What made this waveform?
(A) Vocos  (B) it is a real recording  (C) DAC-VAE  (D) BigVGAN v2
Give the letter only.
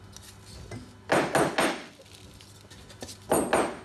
B